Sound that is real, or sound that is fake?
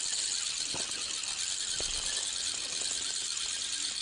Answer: real